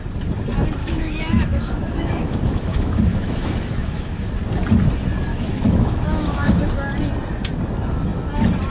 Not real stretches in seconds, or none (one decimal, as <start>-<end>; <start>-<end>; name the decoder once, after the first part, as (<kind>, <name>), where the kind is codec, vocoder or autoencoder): 0.8-4.3 (autoencoder, DAC-VAE); 5.3-6.5